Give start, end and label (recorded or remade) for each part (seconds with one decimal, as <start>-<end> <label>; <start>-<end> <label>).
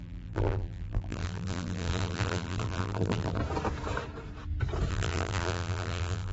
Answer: 0.0-3.4 remade; 3.4-4.9 recorded; 4.9-6.3 remade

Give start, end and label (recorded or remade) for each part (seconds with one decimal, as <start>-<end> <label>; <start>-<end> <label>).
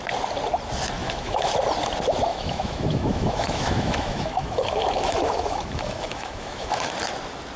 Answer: 0.0-1.0 recorded; 1.0-1.5 remade; 1.5-2.3 recorded; 2.3-6.9 remade; 6.9-7.6 recorded